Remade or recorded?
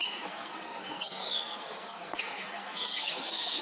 remade